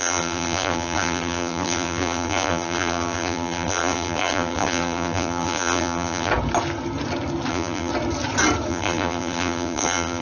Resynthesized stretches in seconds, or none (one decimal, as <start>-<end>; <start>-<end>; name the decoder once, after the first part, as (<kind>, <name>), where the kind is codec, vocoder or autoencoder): 0.0-6.3 (vocoder, BigVGAN v2); 7.5-7.9; 8.7-10.2